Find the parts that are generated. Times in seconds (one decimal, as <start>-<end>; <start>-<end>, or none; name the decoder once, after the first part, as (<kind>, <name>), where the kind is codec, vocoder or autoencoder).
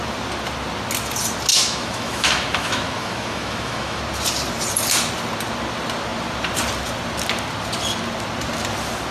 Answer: 1.5-4.0 (autoencoder, DAC-VAE)